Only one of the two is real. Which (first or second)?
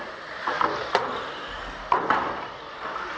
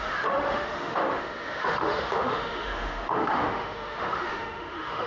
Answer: first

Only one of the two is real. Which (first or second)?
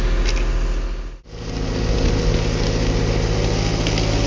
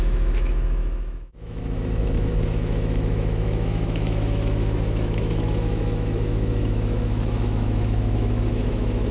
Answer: first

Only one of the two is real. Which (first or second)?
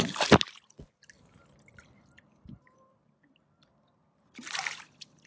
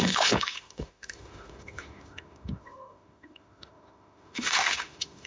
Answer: first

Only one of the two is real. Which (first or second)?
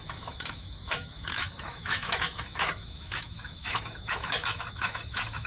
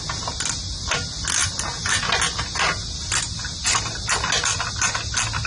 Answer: second